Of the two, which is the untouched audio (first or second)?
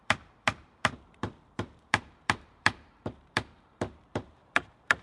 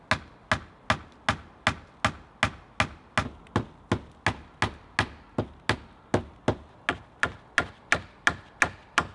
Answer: second